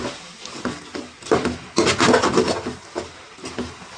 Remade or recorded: recorded